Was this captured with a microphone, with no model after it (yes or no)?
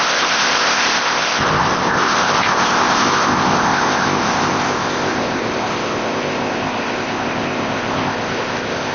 no